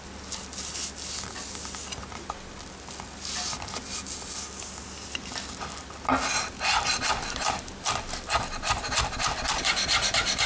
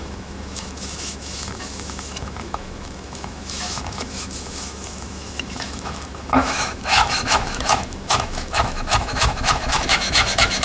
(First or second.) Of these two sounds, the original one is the first